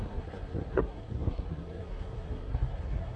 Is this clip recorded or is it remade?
remade